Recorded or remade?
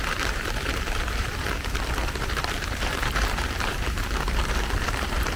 remade